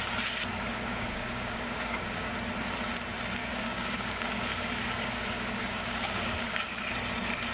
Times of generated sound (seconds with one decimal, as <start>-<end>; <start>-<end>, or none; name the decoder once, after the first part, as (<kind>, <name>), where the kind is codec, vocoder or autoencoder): 0.5-2.3 (codec, DAC); 3.4-6.8